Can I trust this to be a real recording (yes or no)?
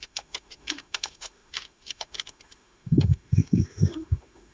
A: no